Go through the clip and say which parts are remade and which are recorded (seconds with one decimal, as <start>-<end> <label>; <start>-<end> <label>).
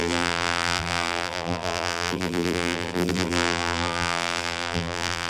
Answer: 0.0-5.3 remade